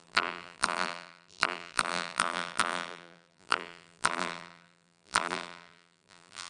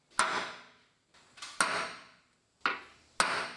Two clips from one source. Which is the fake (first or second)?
first